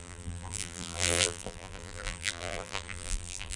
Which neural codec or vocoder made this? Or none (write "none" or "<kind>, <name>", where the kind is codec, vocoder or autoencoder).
vocoder, BigVGAN v2